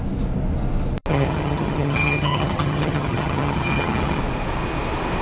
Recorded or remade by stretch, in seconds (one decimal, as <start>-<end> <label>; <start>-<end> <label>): 0.0-1.1 recorded; 1.1-4.2 remade; 4.2-5.2 recorded